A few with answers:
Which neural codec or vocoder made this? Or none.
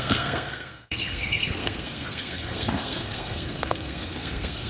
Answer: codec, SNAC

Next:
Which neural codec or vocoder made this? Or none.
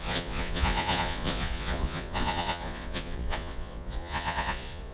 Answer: vocoder, Vocos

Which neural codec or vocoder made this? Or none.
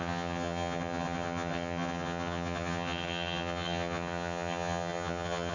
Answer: vocoder, HiFi-GAN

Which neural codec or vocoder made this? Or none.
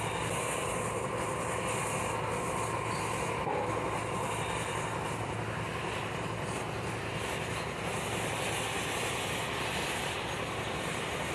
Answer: none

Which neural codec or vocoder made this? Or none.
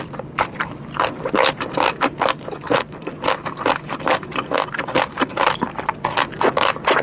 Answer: none